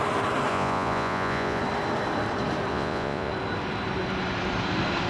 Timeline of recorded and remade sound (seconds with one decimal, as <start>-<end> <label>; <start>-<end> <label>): 0.0-0.5 recorded; 0.5-1.6 remade; 1.6-2.7 recorded; 2.7-3.3 remade; 3.3-5.1 recorded